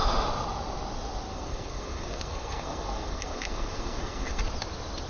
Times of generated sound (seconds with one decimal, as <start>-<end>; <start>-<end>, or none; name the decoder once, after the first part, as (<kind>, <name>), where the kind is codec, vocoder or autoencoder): 1.3-4.4 (codec, SNAC)